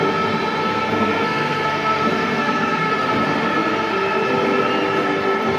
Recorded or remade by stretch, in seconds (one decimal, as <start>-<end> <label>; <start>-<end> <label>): 0.0-0.6 recorded; 0.6-2.9 remade; 2.9-5.6 recorded